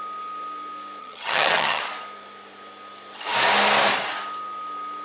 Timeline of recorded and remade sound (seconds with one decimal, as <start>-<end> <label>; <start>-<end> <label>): 0.0-1.0 recorded; 1.0-1.8 remade; 1.8-5.0 recorded